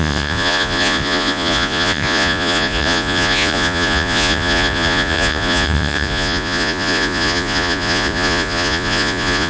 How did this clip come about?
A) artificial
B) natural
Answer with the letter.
A